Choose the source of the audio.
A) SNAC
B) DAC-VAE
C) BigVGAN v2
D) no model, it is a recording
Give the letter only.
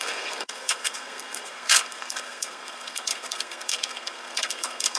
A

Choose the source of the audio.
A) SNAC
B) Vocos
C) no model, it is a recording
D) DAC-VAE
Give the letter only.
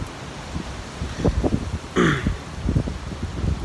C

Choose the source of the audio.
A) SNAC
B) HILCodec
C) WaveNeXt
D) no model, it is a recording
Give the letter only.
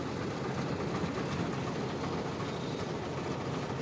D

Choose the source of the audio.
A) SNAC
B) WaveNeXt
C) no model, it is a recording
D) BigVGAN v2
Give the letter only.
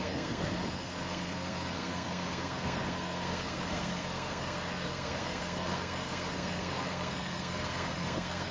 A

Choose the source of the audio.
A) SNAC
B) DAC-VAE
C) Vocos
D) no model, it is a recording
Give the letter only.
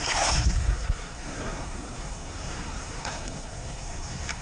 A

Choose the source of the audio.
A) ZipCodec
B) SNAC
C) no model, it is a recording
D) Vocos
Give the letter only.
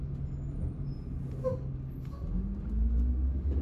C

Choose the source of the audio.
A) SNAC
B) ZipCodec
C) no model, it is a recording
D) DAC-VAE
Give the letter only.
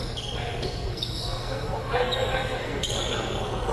A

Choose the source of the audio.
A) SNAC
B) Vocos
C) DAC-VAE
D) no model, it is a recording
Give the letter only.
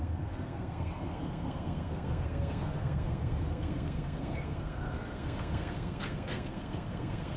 A